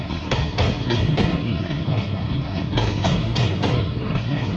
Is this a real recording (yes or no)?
no